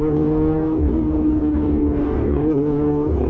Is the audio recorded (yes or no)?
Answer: no